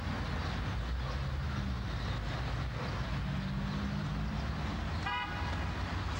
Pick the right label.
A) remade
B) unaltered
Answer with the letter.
B